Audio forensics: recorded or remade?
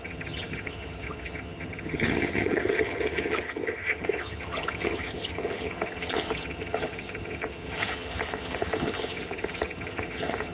remade